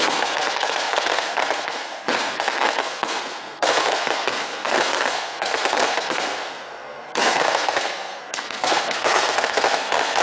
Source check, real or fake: fake